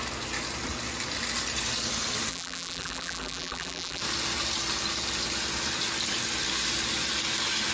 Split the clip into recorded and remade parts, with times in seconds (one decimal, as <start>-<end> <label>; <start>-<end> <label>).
0.0-2.3 recorded; 2.3-4.0 remade; 4.0-7.7 recorded

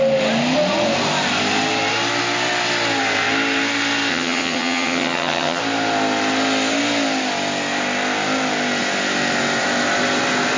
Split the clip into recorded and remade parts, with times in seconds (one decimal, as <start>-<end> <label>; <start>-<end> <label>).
0.0-4.1 recorded; 4.1-5.6 remade; 5.6-10.6 recorded

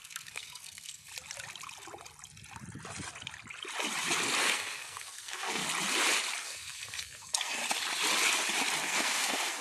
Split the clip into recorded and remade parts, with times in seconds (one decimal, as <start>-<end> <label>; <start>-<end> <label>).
0.0-1.1 remade; 1.1-4.4 recorded; 4.4-5.6 remade; 5.6-6.4 recorded; 6.4-7.6 remade; 7.6-8.8 recorded; 8.8-9.6 remade

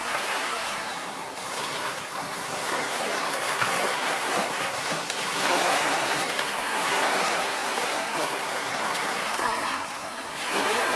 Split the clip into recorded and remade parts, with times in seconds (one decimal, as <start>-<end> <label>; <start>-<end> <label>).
0.0-11.0 remade

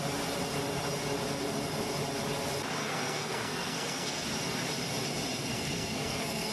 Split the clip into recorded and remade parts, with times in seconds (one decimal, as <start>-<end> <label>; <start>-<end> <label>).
0.0-2.8 recorded; 2.8-4.2 remade; 4.2-5.5 recorded; 5.5-6.5 remade